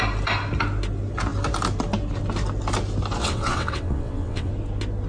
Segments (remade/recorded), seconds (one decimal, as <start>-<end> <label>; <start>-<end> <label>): 0.0-3.2 recorded; 3.2-4.5 remade; 4.5-5.1 recorded